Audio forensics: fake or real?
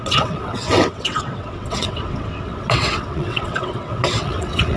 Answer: fake